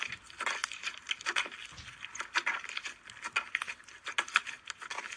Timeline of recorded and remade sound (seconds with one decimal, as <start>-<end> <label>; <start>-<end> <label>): 0.0-5.2 recorded